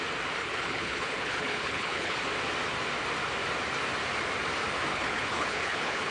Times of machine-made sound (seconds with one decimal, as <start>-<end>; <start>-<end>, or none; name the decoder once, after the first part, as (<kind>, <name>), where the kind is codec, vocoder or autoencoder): 0.4-2.2 (codec, HILCodec); 4.9-6.1